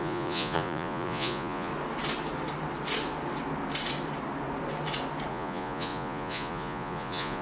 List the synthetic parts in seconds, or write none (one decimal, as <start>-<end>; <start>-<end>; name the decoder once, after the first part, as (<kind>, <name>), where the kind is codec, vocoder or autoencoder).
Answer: 0.0-1.7 (vocoder, Vocos); 5.3-7.4